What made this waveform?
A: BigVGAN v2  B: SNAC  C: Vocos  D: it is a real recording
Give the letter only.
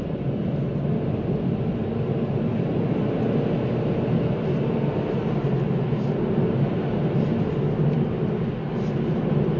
D